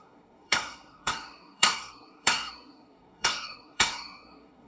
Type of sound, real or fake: fake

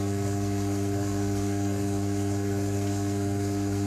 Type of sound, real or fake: fake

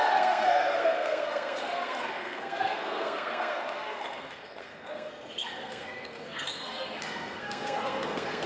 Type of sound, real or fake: fake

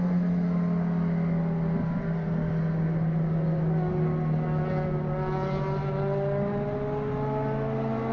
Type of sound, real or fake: real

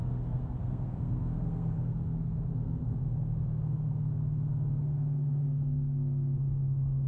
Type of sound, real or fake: fake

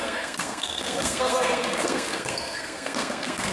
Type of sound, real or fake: fake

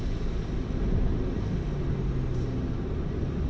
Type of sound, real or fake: real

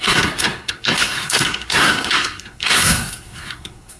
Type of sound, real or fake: fake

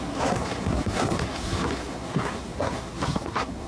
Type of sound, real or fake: fake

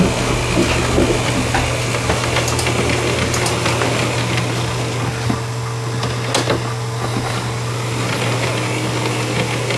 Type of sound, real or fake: real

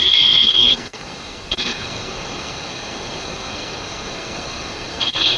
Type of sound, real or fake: fake